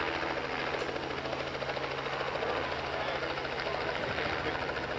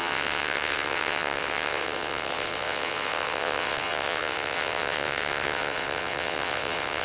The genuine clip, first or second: first